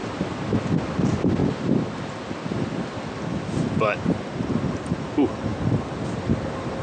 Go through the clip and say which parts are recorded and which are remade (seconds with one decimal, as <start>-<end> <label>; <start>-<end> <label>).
0.0-6.8 recorded